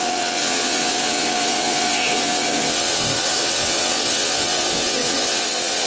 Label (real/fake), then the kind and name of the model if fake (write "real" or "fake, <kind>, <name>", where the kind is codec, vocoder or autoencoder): fake, vocoder, WaveNeXt